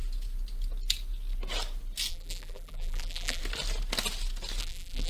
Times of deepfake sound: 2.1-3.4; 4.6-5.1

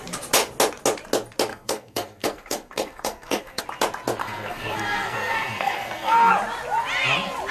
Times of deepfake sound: 1.5-3.6; 4.2-6.3

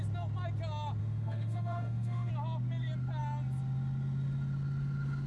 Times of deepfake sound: 1.0-2.3

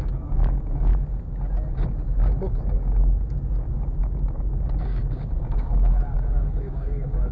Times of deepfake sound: 0.0-0.9; 2.4-7.3